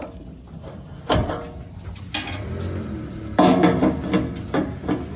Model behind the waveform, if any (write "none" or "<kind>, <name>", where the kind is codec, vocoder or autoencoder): none